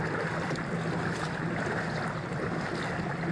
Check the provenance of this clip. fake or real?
real